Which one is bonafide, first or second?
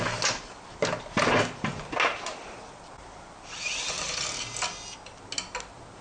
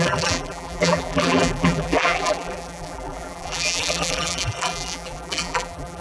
first